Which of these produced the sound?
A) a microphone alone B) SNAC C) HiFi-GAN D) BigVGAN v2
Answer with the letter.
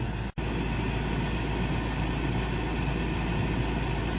A